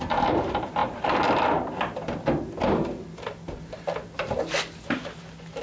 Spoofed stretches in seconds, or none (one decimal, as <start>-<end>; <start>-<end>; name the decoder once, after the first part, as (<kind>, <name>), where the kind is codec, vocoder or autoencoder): none